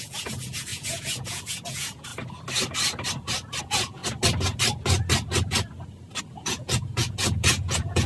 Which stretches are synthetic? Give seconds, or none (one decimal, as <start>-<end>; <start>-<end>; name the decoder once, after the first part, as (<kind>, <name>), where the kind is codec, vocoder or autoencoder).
0.0-2.1 (vocoder, Vocos); 3.6-4.0; 6.2-8.1